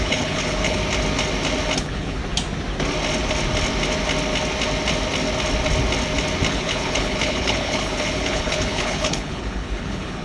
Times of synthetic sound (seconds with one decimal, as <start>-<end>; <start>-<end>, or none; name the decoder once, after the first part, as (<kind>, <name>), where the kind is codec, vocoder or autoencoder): 0.0-0.8 (codec, HILCodec); 1.8-2.2; 6.5-10.2